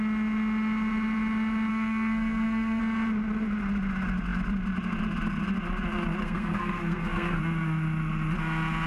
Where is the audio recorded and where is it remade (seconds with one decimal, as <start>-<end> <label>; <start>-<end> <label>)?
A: 0.0-1.7 recorded; 1.7-2.8 remade; 2.8-6.2 recorded; 6.2-7.4 remade; 7.4-8.9 recorded